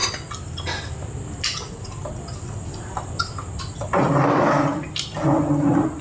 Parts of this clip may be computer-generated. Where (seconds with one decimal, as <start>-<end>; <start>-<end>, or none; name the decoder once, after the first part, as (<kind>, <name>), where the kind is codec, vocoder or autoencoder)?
none

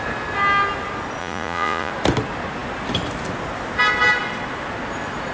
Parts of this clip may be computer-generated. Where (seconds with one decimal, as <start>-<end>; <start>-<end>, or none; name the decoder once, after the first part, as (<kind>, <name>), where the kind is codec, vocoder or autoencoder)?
1.2-1.9 (vocoder, Vocos)

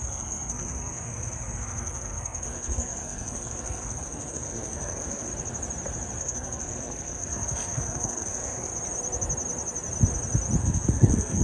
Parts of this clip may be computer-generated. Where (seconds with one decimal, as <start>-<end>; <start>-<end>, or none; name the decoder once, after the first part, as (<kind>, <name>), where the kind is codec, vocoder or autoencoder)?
0.0-5.3 (codec, SNAC); 6.2-8.7; 10.6-11.4

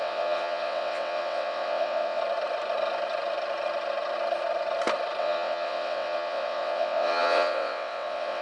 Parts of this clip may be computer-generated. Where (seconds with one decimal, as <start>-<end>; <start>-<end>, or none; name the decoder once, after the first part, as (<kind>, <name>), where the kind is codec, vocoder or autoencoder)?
0.0-2.2 (vocoder, WaveNeXt); 5.2-8.4

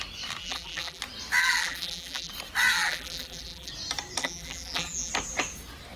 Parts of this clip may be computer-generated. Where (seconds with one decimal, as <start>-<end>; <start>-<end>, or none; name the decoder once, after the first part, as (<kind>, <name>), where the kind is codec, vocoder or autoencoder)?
0.4-1.0 (vocoder, BigVGAN v2); 1.4-2.3; 2.7-3.7; 4.2-5.1

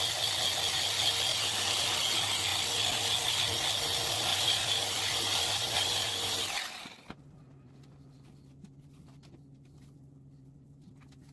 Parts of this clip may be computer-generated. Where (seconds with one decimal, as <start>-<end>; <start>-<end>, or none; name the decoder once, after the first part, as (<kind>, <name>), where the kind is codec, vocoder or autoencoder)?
1.3-2.0 (vocoder, BigVGAN v2); 4.3-7.7